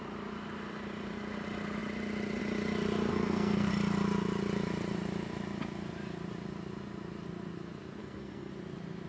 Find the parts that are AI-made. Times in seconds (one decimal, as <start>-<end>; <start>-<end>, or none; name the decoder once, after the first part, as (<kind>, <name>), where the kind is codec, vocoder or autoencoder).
3.1-3.7 (codec, SNAC); 8.0-8.5